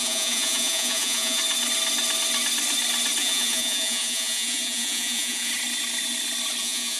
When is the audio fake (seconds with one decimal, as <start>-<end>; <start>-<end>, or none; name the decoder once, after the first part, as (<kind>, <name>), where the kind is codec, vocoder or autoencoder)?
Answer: 0.0-1.4 (vocoder, Vocos); 3.2-5.5; 6.6-7.0